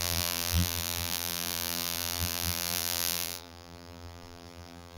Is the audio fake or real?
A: fake